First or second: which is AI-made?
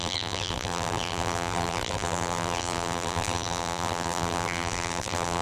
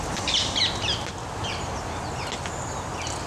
first